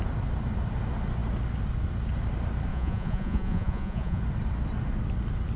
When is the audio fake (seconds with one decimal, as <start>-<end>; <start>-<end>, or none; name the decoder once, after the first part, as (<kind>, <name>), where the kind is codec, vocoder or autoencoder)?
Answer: 2.7-4.2 (vocoder, Vocos)